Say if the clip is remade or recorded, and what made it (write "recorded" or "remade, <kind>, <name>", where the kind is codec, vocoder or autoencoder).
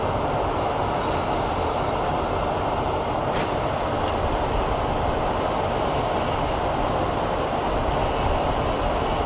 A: recorded